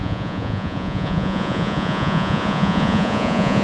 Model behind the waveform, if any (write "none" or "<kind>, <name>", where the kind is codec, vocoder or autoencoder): vocoder, Vocos